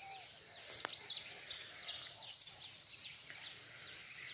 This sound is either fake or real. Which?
real